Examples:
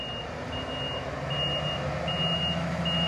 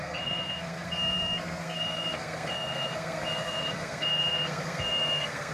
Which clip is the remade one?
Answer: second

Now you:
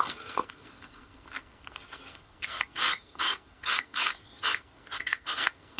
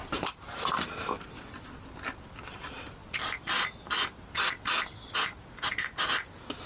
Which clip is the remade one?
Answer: first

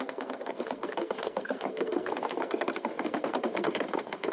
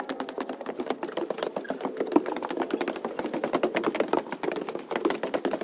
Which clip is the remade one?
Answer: first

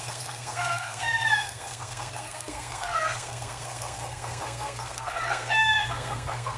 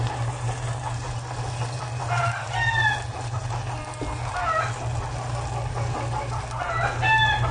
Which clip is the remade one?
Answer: first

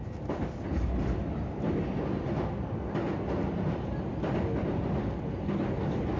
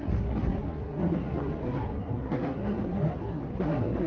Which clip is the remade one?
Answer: second